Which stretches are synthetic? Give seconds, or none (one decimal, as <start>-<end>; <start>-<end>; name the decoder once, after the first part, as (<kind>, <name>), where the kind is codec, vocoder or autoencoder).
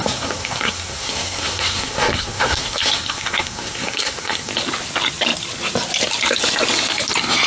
0.0-4.5 (codec, SNAC)